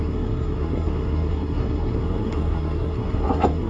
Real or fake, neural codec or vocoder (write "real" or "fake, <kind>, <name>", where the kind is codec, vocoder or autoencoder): fake, codec, SNAC